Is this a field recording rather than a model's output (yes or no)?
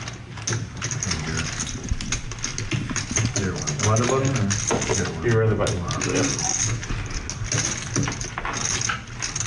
yes